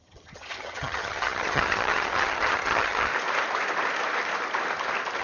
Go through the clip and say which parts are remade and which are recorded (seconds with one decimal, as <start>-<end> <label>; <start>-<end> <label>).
0.0-3.1 remade; 3.1-5.2 recorded